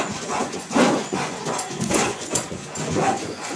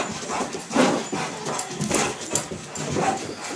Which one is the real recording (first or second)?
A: second